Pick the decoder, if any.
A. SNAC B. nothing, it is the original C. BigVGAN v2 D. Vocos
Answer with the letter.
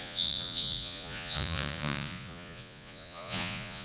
D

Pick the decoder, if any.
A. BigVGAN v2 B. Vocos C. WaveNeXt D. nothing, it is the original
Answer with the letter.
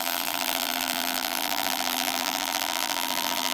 A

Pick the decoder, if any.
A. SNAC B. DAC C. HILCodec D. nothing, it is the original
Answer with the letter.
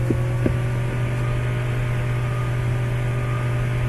D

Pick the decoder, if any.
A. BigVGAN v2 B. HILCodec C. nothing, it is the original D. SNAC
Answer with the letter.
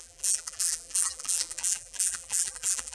A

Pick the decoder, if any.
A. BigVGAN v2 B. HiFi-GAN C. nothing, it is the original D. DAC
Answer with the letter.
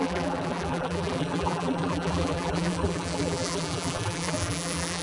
A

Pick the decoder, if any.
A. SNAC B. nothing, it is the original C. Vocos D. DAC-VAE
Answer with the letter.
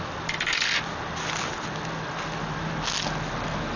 B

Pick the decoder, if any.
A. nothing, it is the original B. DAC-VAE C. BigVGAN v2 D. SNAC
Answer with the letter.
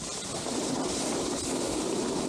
A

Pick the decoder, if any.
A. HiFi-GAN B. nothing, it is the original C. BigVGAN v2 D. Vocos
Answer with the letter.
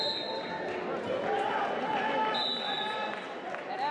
B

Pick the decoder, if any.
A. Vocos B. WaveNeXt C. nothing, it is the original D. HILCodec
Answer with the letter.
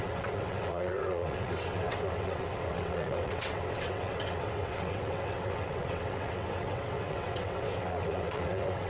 B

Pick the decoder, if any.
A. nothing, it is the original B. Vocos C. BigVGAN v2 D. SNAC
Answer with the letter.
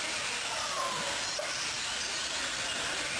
A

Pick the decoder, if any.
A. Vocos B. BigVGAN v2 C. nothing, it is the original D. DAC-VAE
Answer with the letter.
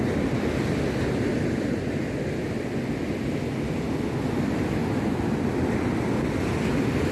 C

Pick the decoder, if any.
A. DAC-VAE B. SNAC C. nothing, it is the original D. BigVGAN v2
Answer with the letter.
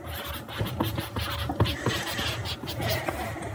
C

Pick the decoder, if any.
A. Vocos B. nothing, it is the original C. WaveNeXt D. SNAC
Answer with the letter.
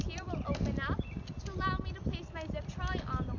B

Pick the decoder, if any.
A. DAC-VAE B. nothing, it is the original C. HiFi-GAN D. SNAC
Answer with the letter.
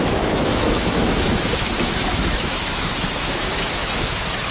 A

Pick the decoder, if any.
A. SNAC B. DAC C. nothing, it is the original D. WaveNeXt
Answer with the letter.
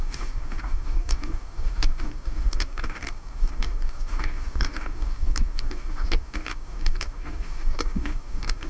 B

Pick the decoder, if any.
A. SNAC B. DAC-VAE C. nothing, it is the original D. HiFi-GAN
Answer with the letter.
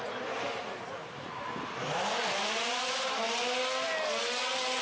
C